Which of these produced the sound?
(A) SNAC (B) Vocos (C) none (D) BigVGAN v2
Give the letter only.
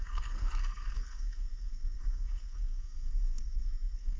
A